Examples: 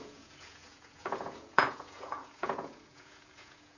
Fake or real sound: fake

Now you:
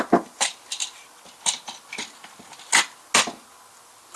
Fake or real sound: real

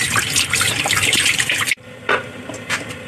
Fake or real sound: fake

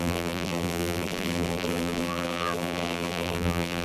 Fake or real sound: fake